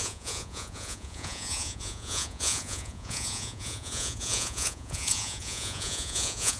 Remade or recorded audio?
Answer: remade